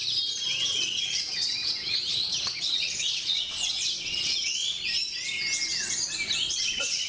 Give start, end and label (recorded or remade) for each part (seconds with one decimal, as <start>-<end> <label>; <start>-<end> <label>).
0.0-0.5 recorded; 0.5-4.8 remade; 4.8-6.4 recorded; 6.4-7.1 remade